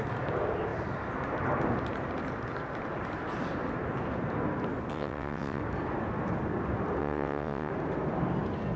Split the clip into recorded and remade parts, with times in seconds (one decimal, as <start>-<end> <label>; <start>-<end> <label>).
0.0-4.9 recorded; 4.9-5.6 remade; 5.6-7.0 recorded; 7.0-7.7 remade; 7.7-8.8 recorded

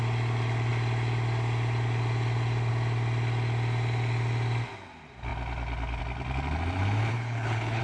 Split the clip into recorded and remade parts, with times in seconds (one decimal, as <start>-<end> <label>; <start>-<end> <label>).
0.0-7.1 recorded; 7.1-7.8 remade

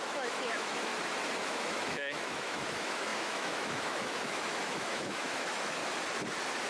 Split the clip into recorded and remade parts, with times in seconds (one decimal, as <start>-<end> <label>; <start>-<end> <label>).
0.0-0.9 remade; 0.9-1.4 recorded; 1.4-5.8 remade; 5.8-6.7 recorded

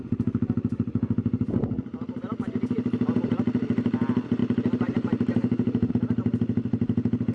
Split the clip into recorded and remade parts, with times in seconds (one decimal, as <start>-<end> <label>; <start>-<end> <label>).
0.0-4.4 recorded; 4.4-5.9 remade; 5.9-7.3 recorded